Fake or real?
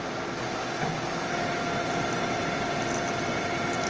real